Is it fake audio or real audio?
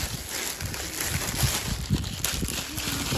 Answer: real